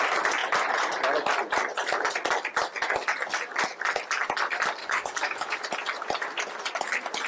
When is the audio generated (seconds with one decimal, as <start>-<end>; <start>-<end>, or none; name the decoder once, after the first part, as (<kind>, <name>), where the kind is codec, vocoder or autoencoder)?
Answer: 4.8-5.6 (codec, DAC)